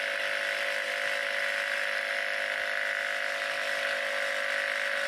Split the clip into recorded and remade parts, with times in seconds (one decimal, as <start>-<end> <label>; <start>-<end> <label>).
0.0-5.1 recorded

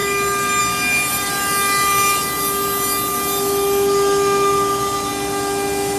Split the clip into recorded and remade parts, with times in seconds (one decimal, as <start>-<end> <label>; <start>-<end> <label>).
0.0-6.0 recorded

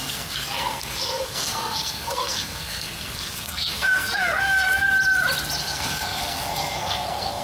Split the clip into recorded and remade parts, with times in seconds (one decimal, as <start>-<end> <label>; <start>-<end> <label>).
0.0-4.8 remade; 4.8-5.6 recorded; 5.6-7.4 remade

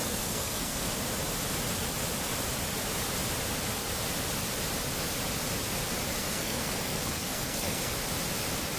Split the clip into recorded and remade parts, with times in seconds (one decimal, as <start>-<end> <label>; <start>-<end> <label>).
0.0-0.9 remade; 0.9-6.2 recorded; 6.2-7.9 remade; 7.9-8.8 recorded

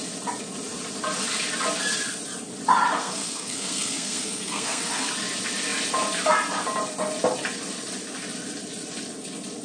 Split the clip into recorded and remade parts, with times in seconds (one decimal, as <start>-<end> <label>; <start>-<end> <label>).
0.0-3.0 recorded; 3.0-5.1 remade; 5.1-9.6 recorded